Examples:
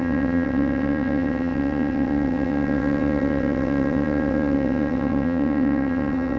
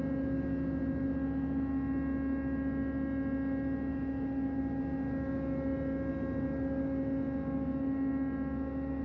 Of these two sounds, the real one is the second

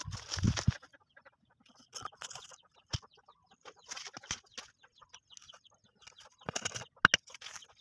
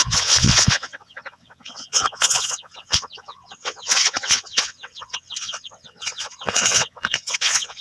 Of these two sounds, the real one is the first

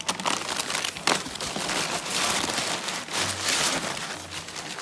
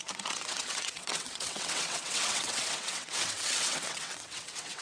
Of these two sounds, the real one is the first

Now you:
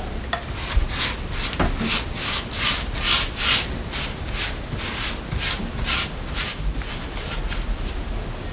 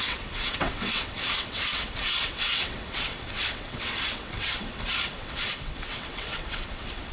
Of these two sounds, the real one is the first